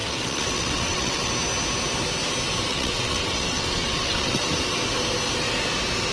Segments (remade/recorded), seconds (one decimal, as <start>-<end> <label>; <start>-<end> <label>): 0.0-1.3 remade; 1.3-2.7 recorded; 2.7-4.4 remade; 4.4-6.1 recorded